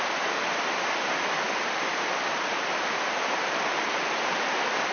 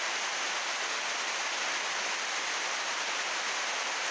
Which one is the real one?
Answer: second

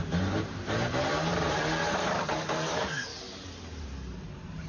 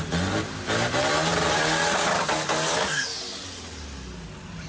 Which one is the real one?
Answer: second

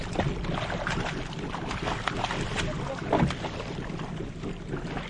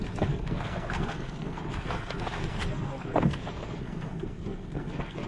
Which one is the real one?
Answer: first